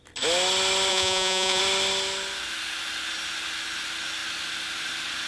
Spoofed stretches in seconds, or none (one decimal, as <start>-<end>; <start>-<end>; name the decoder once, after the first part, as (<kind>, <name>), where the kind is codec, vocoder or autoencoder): 0.9-1.6 (vocoder, Vocos)